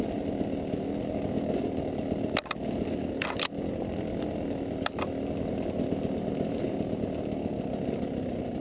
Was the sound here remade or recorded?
recorded